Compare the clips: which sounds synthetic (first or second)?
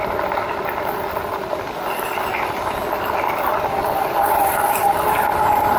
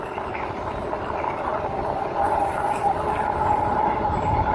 second